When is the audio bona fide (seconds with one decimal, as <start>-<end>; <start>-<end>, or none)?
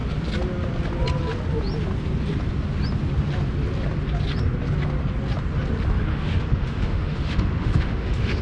0.0-6.1